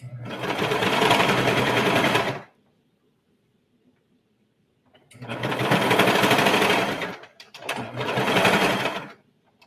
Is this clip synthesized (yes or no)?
yes